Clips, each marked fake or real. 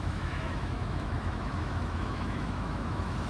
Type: fake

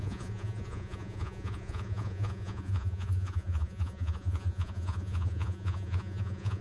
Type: fake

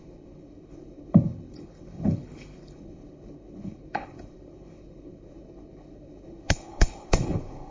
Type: fake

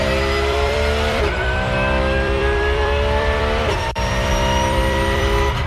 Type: fake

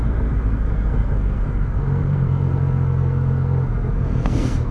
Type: fake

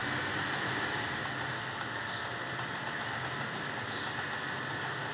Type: real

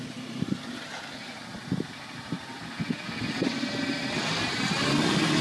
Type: real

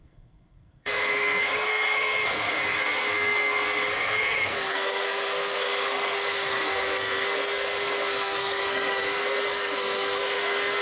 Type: fake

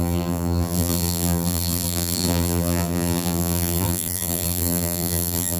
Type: fake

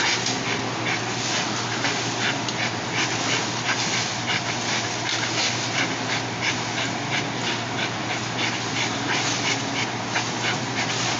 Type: real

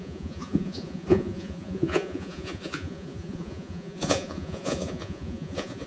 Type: fake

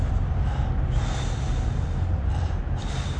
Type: real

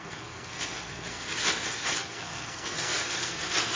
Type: fake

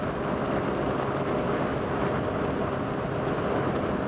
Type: real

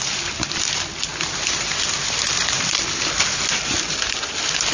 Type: real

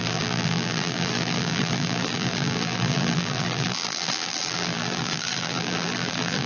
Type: fake